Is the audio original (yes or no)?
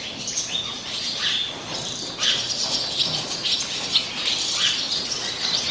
yes